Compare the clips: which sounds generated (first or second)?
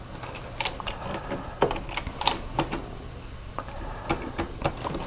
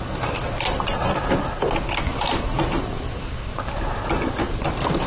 second